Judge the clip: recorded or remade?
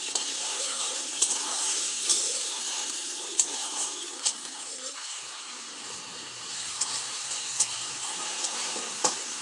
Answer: remade